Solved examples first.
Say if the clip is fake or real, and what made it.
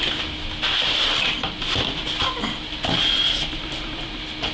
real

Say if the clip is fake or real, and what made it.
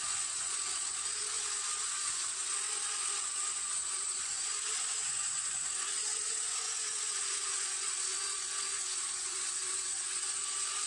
fake, vocoder, Vocos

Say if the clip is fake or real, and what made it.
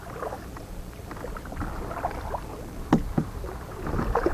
real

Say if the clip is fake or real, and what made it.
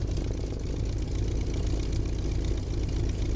real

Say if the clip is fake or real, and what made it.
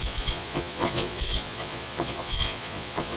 fake, vocoder, Vocos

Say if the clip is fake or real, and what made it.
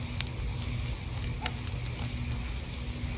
real